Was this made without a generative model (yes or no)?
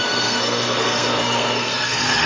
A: no